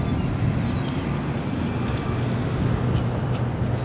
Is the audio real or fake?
real